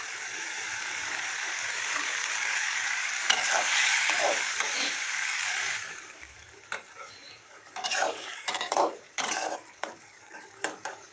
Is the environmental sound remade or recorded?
remade